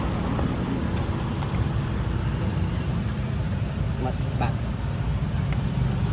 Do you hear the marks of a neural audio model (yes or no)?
no